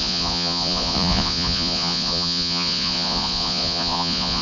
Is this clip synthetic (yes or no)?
yes